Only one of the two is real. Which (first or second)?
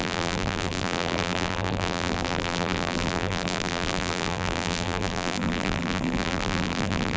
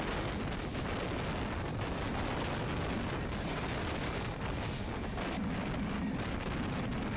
second